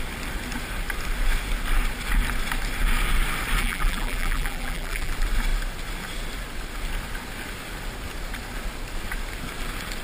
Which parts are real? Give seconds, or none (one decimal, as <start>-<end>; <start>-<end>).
0.0-3.6; 5.1-10.0